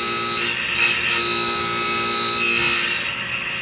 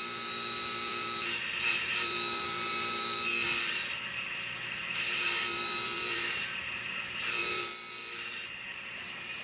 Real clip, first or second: first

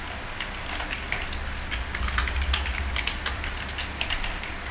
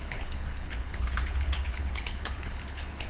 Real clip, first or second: first